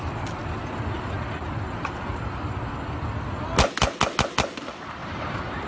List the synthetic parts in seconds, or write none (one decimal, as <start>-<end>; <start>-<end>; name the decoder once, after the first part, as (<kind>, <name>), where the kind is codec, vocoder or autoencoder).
5.0-5.7 (vocoder, BigVGAN v2)